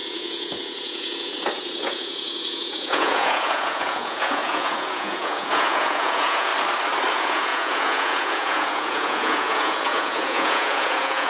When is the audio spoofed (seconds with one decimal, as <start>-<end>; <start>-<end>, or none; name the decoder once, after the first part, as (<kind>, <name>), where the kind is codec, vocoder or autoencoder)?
0.0-6.5 (vocoder, Vocos); 7.1-11.3